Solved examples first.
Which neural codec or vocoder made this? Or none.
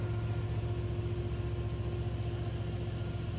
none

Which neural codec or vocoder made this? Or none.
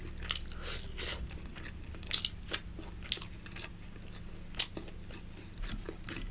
none